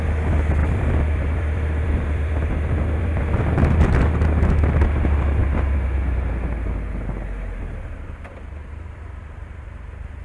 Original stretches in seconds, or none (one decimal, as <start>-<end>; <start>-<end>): 0.0-0.6; 3.2-7.6